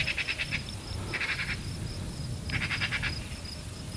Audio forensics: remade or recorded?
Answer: recorded